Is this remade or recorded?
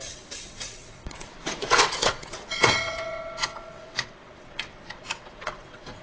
remade